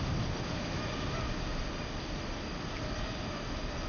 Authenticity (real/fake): real